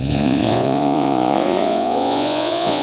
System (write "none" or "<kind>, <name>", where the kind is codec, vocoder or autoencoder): vocoder, Vocos